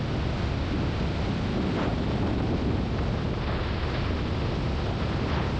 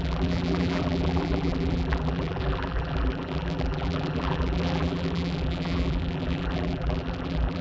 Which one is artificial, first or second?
second